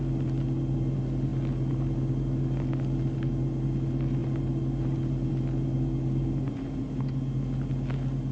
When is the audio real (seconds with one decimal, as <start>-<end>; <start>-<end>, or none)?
0.0-8.3